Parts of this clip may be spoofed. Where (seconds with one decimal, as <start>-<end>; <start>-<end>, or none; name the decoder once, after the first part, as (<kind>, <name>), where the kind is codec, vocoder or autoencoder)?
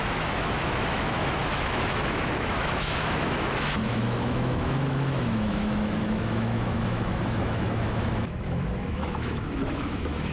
0.0-10.3 (autoencoder, DAC-VAE)